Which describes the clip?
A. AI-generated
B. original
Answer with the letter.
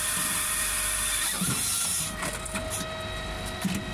B